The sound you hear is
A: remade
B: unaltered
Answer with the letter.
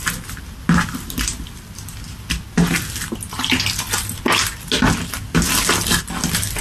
B